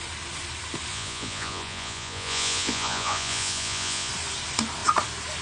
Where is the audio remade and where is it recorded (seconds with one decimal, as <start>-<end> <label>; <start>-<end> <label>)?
0.0-0.9 recorded; 0.9-4.1 remade; 4.1-5.4 recorded